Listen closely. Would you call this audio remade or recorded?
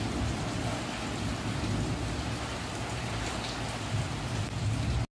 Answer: recorded